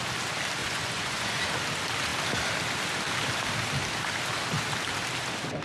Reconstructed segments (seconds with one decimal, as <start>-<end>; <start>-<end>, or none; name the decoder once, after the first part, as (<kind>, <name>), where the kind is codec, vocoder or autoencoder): 0.6-1.4 (vocoder, Vocos)